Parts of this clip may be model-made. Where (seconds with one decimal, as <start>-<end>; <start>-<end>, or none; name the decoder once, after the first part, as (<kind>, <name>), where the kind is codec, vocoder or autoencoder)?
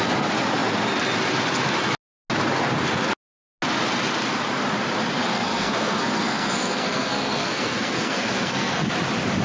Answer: 5.2-8.9 (codec, SNAC)